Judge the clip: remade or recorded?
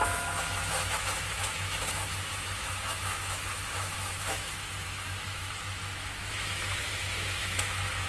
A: remade